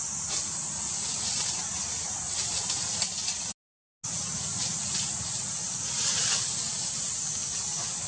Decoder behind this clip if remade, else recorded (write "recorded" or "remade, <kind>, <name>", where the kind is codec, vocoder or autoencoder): recorded